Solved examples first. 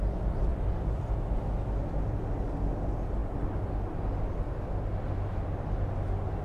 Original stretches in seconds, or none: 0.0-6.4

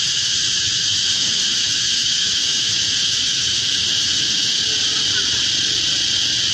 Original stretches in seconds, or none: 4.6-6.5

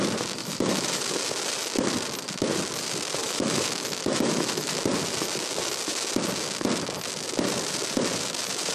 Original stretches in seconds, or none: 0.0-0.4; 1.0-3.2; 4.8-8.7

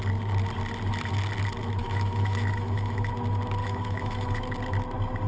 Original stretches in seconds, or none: 0.0-1.8; 3.1-3.6; 4.4-5.3

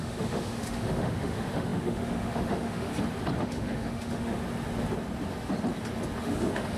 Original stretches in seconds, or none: 2.9-3.4; 4.4-6.2

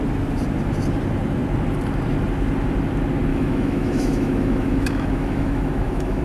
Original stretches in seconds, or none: 0.0-3.3

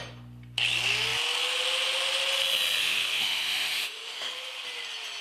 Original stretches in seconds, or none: 0.0-2.8; 4.3-5.2